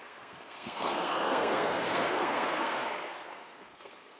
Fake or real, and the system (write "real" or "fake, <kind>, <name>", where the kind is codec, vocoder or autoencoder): fake, codec, SNAC